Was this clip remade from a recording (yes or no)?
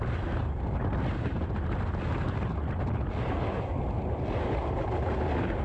no